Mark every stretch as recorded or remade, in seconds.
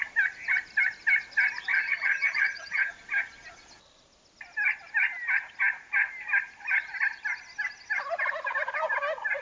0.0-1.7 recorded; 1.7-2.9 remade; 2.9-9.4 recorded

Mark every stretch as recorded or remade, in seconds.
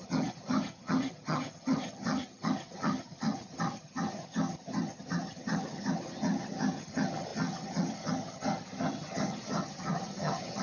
0.0-10.6 remade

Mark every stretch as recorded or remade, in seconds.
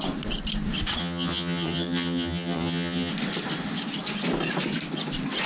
0.0-1.0 recorded; 1.0-3.1 remade; 3.1-5.5 recorded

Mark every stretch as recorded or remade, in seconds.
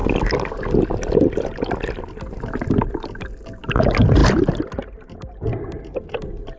0.0-6.6 recorded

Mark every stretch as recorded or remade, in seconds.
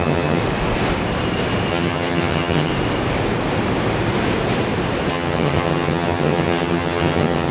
0.0-0.4 remade; 0.4-1.7 recorded; 1.7-2.7 remade; 2.7-5.1 recorded; 5.1-7.5 remade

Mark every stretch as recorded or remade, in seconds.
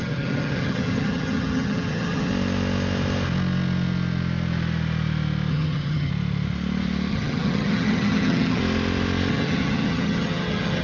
0.0-2.3 remade; 2.3-5.5 recorded; 5.5-6.1 remade; 6.1-7.1 recorded; 7.1-8.6 remade; 8.6-9.3 recorded; 9.3-10.8 remade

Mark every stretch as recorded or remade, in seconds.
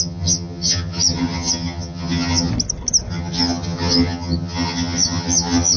0.0-2.5 remade; 2.5-3.1 recorded; 3.1-5.8 remade